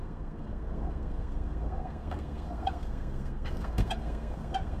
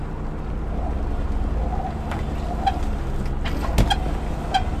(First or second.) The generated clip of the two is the first